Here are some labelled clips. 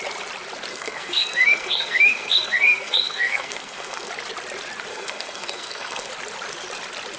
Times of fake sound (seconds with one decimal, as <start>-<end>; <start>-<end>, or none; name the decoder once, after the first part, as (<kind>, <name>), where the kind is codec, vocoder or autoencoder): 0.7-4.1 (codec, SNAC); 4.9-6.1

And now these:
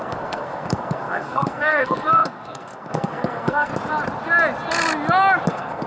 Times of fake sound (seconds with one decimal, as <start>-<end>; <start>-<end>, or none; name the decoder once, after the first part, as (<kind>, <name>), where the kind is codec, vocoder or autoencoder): 0.0-3.7 (codec, SNAC); 5.5-5.9

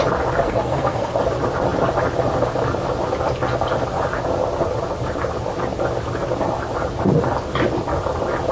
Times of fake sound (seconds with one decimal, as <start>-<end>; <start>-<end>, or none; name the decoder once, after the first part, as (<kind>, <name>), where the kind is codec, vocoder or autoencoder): 0.4-1.1 (codec, SNAC)